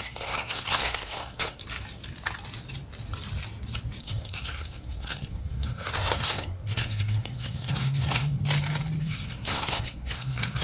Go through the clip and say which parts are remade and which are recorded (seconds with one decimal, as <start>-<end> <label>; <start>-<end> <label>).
0.0-1.6 remade; 1.6-4.0 recorded; 4.0-8.4 remade; 8.4-9.0 recorded; 9.0-10.6 remade